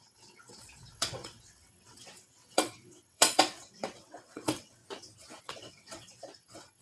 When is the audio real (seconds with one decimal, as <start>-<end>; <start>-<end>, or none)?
4.8-5.4